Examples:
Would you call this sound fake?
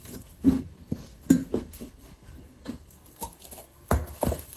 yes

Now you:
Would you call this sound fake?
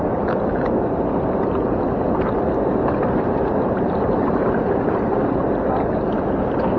no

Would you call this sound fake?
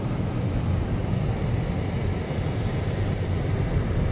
no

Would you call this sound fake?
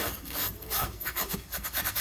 yes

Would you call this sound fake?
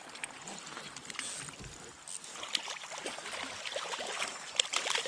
no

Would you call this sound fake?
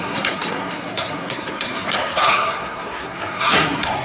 yes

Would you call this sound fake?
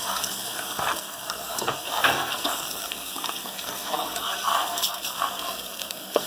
yes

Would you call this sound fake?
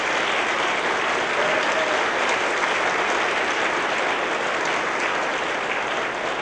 no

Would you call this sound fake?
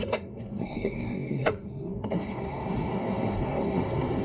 yes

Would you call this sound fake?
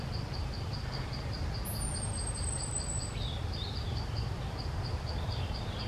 no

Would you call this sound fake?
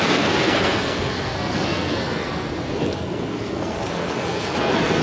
yes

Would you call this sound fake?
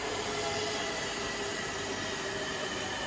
no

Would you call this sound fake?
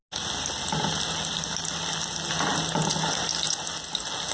no